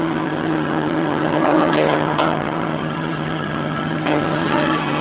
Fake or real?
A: fake